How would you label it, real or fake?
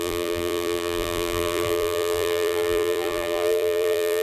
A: fake